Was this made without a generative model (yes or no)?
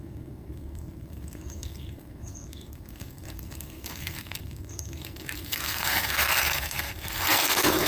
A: no